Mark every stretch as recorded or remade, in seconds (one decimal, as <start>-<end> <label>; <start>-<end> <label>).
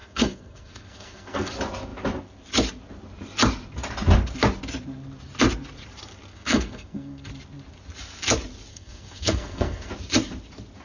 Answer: 0.0-1.5 remade; 1.5-6.3 recorded; 6.3-7.3 remade; 7.3-8.7 recorded; 8.7-9.9 remade; 9.9-10.8 recorded